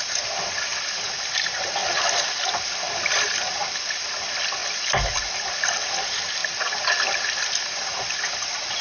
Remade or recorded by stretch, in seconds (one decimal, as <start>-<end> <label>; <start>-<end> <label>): 0.0-8.8 recorded